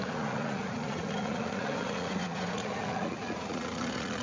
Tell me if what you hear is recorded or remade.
remade